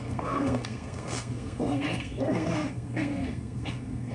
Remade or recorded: remade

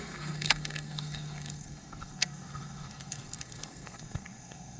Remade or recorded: remade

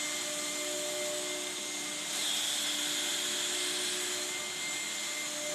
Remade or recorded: recorded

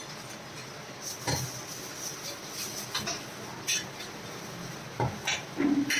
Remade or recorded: recorded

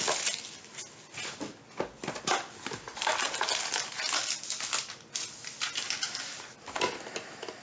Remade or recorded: recorded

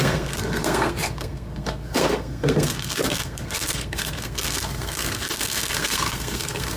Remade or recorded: remade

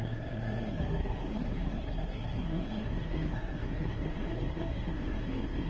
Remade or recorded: remade